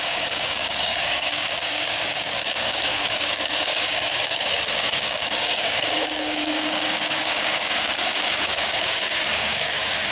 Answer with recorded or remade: remade